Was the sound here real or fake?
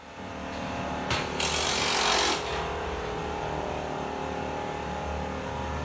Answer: real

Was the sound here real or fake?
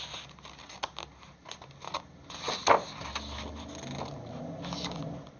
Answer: real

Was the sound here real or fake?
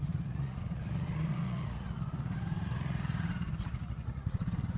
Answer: fake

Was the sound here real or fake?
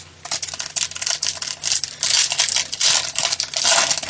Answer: real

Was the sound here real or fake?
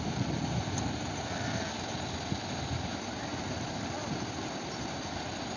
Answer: real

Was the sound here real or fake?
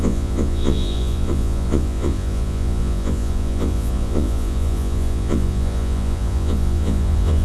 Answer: fake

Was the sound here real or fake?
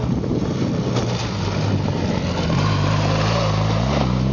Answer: real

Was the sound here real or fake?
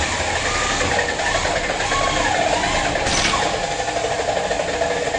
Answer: real